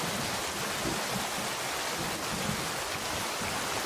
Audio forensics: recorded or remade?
recorded